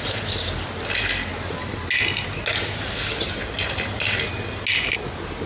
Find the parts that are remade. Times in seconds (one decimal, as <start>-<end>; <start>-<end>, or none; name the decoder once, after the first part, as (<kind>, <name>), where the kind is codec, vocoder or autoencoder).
none